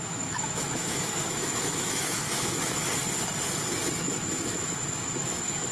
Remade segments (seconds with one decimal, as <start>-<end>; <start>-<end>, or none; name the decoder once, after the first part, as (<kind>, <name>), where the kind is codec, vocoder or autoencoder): 0.0-2.8 (autoencoder, DAC-VAE); 4.0-5.7